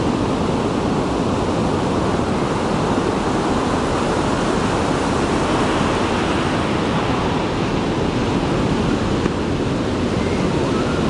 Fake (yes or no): no